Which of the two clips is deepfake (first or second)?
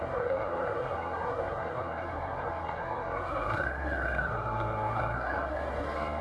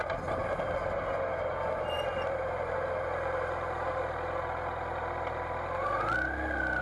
first